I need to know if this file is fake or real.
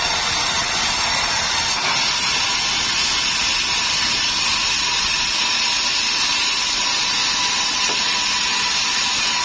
real